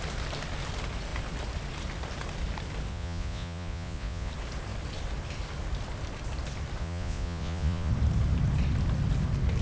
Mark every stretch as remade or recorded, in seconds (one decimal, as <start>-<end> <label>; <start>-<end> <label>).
0.0-2.9 recorded; 2.9-4.3 remade; 4.3-6.8 recorded; 6.8-7.9 remade; 7.9-9.6 recorded